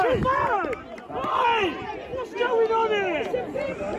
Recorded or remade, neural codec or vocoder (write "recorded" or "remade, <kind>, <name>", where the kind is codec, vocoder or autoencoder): recorded